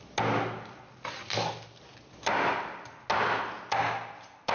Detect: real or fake real